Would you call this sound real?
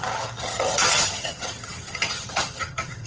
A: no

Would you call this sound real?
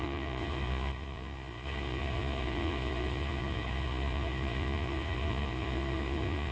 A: no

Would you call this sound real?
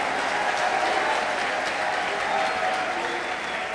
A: yes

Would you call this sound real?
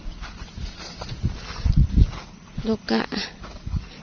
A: yes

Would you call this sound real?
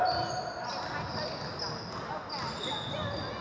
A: yes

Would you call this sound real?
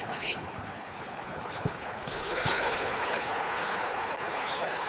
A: no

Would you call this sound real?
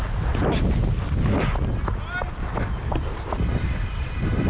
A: yes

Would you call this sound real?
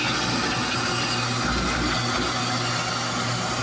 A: yes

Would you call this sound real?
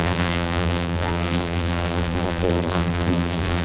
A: no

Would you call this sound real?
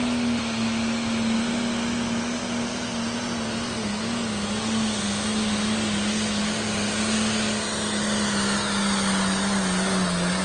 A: yes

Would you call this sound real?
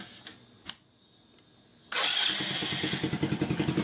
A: yes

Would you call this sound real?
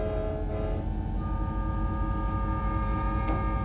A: yes